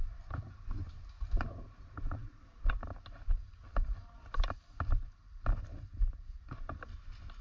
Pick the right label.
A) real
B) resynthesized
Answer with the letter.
A